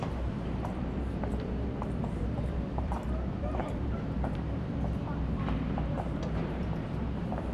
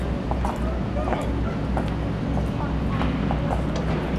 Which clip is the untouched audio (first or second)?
second